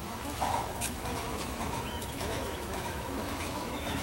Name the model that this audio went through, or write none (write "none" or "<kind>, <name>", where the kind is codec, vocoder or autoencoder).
autoencoder, DAC-VAE